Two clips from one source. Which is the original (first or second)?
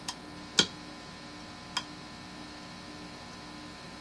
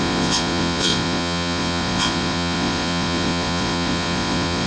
first